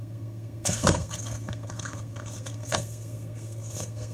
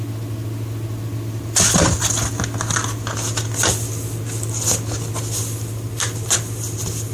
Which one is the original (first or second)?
second